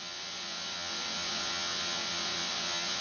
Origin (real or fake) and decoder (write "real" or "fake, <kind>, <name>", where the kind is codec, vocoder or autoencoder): fake, vocoder, WaveNeXt